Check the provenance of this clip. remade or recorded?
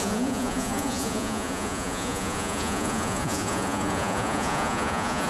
remade